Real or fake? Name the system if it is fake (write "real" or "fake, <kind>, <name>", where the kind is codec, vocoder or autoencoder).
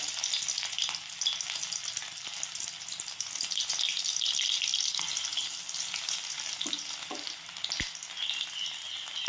real